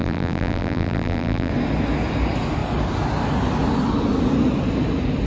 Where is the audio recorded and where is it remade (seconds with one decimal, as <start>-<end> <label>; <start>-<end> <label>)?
0.0-1.5 remade; 1.5-5.3 recorded